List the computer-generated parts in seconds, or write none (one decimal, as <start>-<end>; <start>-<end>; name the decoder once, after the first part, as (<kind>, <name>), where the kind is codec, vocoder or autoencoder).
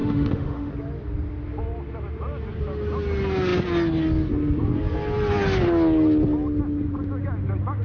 0.0-0.7 (autoencoder, DAC-VAE)